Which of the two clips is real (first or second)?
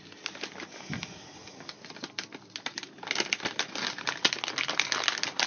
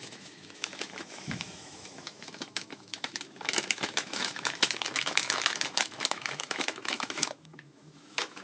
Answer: first